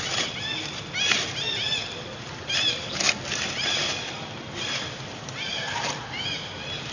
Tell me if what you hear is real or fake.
real